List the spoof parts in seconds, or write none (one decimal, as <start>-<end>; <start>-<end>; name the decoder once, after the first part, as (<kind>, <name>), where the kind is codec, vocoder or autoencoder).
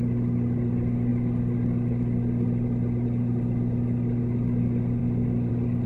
none